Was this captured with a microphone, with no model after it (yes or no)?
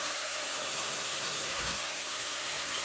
no